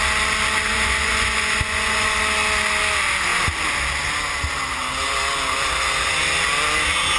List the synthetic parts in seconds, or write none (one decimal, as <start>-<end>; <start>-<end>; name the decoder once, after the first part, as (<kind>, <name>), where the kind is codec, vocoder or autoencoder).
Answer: 0.7-2.2 (vocoder, Vocos)